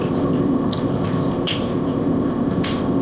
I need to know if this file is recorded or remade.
remade